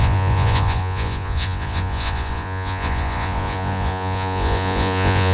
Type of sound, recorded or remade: remade